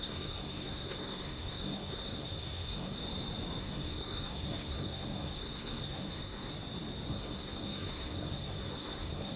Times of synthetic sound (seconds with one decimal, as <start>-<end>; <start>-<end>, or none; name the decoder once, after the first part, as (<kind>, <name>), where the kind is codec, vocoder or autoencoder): 0.0-3.0 (codec, SNAC); 3.6-6.5; 7.1-9.4

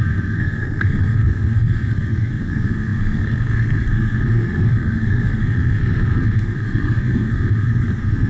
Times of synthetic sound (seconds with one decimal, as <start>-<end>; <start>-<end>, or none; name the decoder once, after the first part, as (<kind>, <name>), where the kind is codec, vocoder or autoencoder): 0.0-8.3 (codec, SNAC)

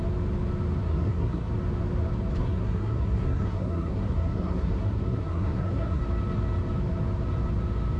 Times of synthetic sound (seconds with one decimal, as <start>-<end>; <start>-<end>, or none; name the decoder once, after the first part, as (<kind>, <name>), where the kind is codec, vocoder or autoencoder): 0.8-1.5 (codec, SNAC); 2.4-6.0

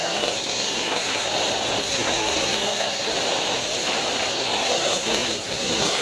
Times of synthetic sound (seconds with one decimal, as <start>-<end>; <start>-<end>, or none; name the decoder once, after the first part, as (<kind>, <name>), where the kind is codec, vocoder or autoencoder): 0.0-1.3 (codec, SNAC); 1.8-3.1; 4.3-6.0

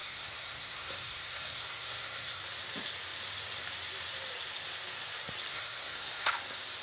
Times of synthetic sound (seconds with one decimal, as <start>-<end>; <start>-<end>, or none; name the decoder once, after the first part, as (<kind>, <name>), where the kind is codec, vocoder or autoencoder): 0.0-2.4 (codec, SNAC); 5.5-6.3